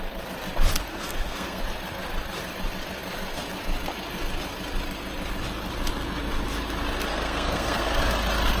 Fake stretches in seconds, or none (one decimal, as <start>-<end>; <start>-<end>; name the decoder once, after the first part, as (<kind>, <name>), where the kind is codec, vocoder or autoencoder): 0.9-1.6 (codec, SNAC); 7.1-8.1